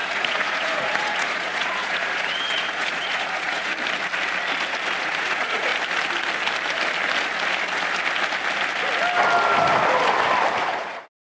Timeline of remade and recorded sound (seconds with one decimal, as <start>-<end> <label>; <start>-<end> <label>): 0.0-3.7 remade; 3.7-5.0 recorded; 5.0-5.7 remade; 5.7-10.6 recorded; 10.6-11.3 remade